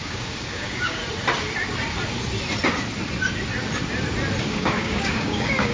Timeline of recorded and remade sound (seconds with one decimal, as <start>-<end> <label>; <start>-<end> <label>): 0.0-1.0 remade; 1.0-4.4 recorded; 4.4-5.7 remade